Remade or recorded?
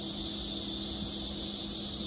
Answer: recorded